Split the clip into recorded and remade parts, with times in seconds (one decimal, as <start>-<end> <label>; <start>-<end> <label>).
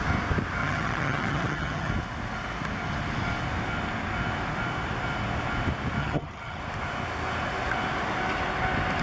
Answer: 0.0-0.6 recorded; 0.6-1.9 remade; 1.9-6.0 recorded; 6.0-6.6 remade; 6.6-9.0 recorded